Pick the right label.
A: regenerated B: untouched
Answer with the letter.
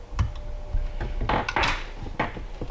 B